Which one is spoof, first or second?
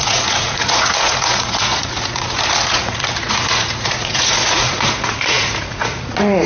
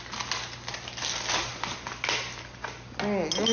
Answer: first